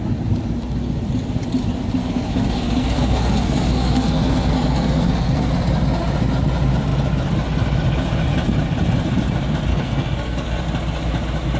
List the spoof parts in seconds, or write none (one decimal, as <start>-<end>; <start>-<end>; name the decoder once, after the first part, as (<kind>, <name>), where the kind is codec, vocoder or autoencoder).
2.0-5.5 (codec, SNAC); 9.7-10.6